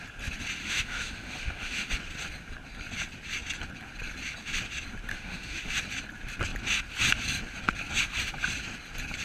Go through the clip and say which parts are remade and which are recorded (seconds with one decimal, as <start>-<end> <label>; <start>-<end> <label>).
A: 0.0-0.6 recorded; 0.6-1.9 remade; 1.9-5.1 recorded; 5.1-5.7 remade; 5.7-9.2 recorded